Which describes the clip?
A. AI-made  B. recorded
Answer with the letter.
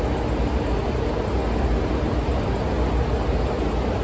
B